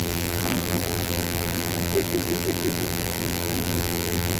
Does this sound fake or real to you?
fake